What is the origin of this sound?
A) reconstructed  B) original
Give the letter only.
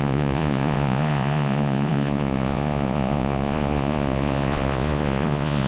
A